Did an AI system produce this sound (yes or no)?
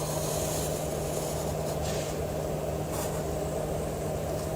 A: no